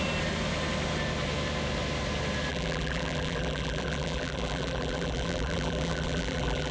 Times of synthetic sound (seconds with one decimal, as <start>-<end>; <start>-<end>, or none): 2.5-6.7